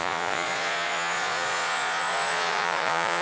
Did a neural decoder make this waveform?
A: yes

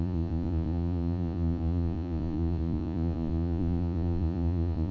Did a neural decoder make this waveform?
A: yes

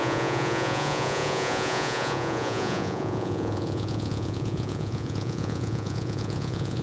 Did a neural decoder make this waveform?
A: yes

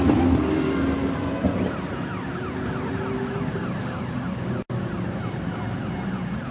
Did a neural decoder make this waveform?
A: no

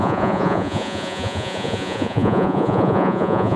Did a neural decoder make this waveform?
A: yes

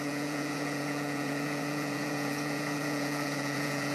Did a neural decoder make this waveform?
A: yes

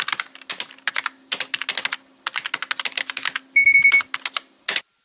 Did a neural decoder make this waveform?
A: no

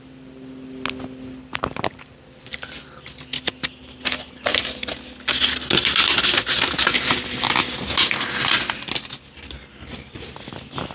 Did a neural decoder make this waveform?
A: no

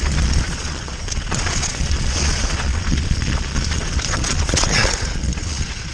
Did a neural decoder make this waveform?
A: yes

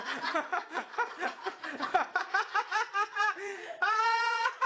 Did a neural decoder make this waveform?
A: yes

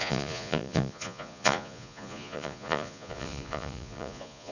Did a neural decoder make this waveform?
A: yes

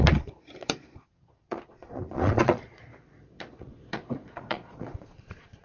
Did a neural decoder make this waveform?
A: yes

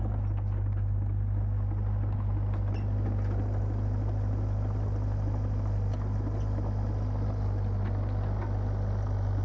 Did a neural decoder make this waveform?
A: no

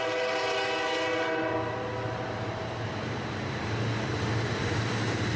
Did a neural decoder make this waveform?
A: no